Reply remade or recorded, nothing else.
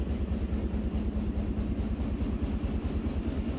recorded